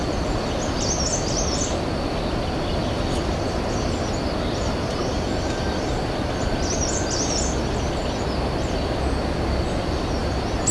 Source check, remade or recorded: recorded